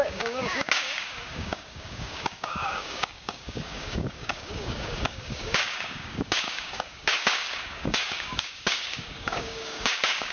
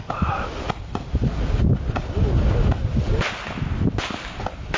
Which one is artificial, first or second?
first